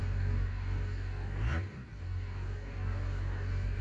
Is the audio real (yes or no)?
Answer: no